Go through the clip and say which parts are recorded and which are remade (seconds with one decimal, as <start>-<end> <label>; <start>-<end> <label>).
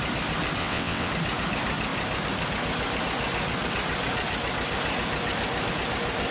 0.0-0.6 recorded; 0.6-1.1 remade; 1.1-6.3 recorded